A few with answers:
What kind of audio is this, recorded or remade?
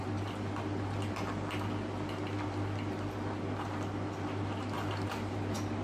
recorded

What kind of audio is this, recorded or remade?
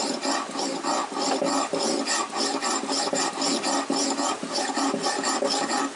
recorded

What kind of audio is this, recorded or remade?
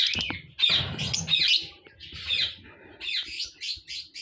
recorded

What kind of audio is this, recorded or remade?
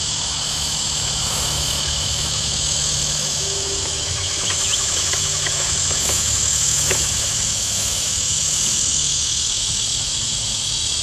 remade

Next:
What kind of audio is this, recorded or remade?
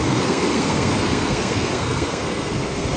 remade